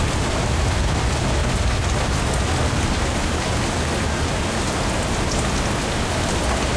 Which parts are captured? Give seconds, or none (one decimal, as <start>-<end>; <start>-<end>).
0.0-6.8